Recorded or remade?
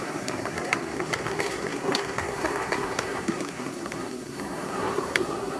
remade